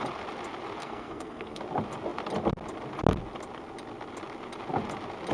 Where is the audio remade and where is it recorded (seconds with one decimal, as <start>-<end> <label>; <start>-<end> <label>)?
0.0-0.8 recorded; 0.8-1.6 remade; 1.6-5.3 recorded